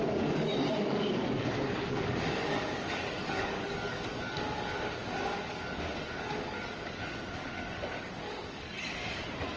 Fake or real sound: fake